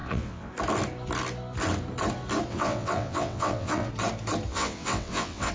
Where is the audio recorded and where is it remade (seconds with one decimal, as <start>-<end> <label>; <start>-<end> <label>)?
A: 0.0-0.5 remade; 0.5-2.5 recorded; 2.5-3.9 remade; 3.9-4.5 recorded; 4.5-5.5 remade